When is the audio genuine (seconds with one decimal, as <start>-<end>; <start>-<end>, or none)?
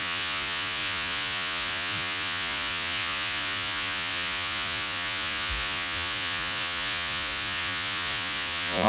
none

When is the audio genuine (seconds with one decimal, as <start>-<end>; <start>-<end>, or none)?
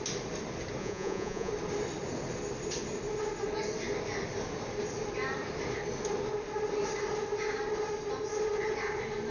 0.0-0.8; 1.5-9.3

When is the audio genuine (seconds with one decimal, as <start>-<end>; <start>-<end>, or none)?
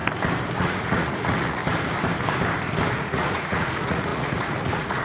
0.0-0.6; 1.6-2.9